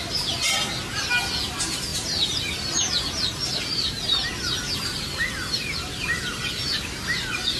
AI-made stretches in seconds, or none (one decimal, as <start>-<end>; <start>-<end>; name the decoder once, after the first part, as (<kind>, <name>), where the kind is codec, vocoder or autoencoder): none